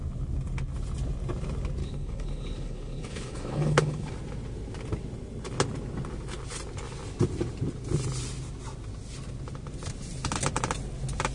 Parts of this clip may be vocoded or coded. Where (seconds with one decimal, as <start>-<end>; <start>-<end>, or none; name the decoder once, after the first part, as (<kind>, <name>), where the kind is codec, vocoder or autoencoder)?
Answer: 1.8-4.1 (codec, HILCodec)